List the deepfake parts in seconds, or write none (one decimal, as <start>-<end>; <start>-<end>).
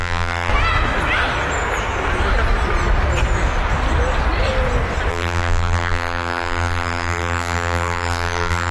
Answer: 0.0-0.5; 5.1-8.7